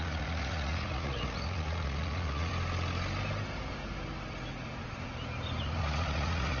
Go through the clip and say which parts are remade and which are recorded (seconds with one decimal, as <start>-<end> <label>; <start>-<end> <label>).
0.0-2.5 remade; 2.5-5.6 recorded; 5.6-6.6 remade